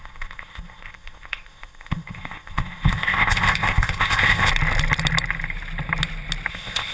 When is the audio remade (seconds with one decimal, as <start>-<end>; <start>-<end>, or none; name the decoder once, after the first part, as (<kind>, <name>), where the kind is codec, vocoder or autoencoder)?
0.0-4.5 (codec, ZipCodec); 6.5-6.9

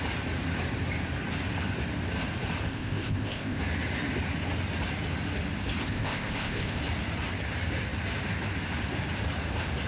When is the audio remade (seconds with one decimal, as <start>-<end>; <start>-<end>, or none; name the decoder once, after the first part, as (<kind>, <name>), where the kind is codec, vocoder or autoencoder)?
2.7-3.6 (codec, ZipCodec); 5.8-6.8